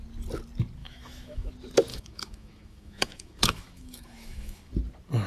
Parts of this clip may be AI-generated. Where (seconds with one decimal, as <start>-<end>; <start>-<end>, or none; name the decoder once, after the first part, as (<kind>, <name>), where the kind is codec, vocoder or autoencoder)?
0.8-1.5 (autoencoder, DAC-VAE); 1.9-4.7